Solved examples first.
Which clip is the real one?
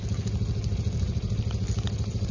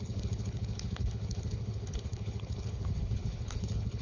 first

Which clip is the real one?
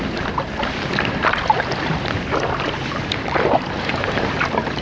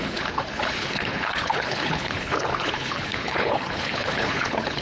first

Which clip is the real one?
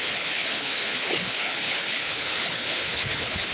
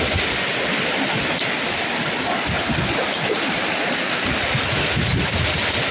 second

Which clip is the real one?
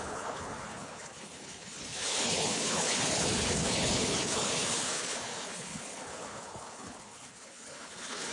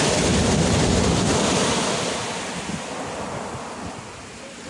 second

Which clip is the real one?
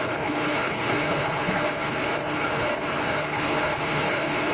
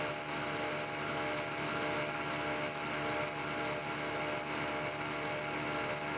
second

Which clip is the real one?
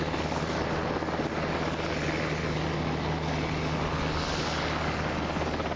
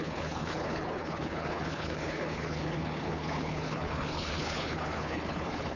first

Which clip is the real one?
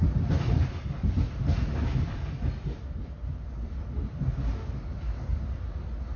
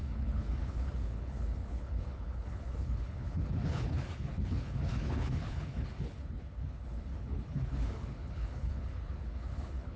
first